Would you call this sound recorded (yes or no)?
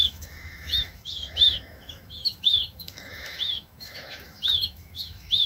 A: no